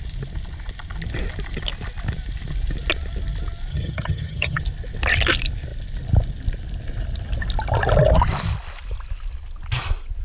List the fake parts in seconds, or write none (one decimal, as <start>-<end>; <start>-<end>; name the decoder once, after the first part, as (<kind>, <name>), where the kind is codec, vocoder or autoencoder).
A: 3.7-4.6 (vocoder, HiFi-GAN)